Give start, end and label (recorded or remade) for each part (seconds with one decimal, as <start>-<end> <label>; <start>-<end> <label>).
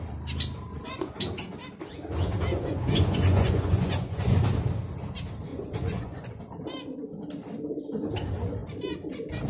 0.0-0.7 recorded; 0.7-1.2 remade; 1.2-2.5 recorded; 2.5-4.4 remade; 4.4-5.5 recorded; 5.5-6.4 remade; 6.4-9.5 recorded